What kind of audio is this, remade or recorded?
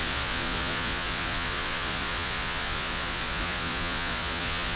remade